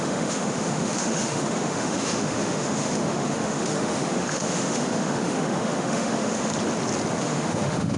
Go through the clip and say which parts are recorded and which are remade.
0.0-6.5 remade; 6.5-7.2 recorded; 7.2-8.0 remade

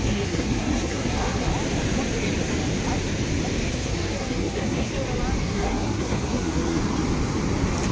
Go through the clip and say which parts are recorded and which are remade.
0.0-1.5 remade; 1.5-3.7 recorded; 3.7-4.9 remade; 4.9-5.4 recorded; 5.4-6.8 remade; 6.8-7.9 recorded

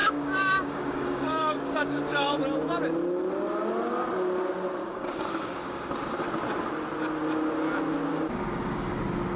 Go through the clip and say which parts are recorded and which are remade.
0.0-2.4 remade; 2.4-4.8 recorded; 4.8-5.9 remade; 5.9-8.1 recorded; 8.1-9.0 remade; 9.0-9.4 recorded

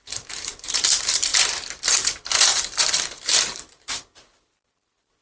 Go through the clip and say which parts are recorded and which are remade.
0.0-1.3 remade; 1.3-1.9 recorded; 1.9-5.2 remade

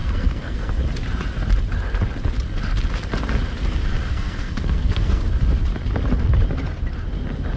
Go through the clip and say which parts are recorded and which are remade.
0.0-0.8 remade; 0.8-4.1 recorded; 4.1-5.3 remade; 5.3-7.6 recorded